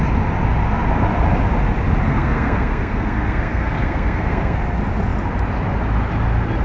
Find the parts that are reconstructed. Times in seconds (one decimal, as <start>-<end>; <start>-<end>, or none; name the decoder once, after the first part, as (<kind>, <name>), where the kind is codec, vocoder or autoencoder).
2.1-4.6 (codec, SNAC)